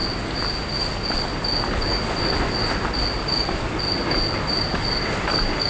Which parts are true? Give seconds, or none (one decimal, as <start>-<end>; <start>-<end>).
0.0-5.7